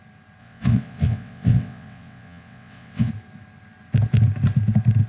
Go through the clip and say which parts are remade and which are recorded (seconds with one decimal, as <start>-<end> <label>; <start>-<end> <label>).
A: 0.0-0.4 recorded; 0.4-3.1 remade; 3.1-5.1 recorded